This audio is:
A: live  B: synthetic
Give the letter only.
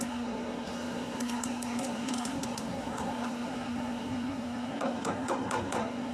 B